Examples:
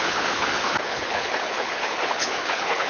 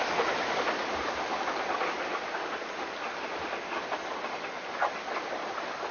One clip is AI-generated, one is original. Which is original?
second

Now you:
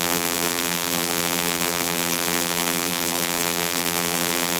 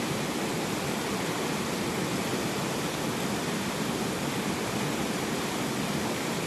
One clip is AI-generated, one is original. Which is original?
second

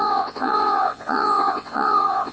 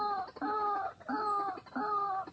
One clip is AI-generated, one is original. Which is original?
second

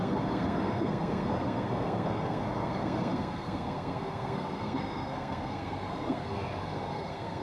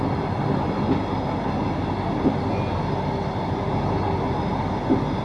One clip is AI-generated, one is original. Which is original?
second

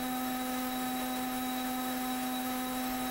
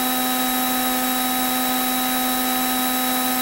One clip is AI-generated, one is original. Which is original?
second